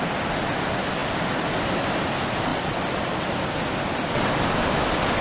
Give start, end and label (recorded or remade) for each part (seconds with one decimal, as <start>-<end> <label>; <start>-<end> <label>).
0.0-2.5 recorded; 2.5-3.2 remade; 3.2-5.2 recorded

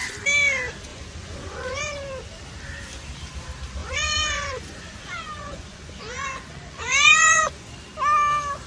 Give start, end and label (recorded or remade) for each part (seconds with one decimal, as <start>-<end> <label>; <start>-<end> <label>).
0.0-0.9 recorded; 0.9-1.8 remade; 1.8-3.8 recorded; 3.8-7.7 remade; 7.7-8.7 recorded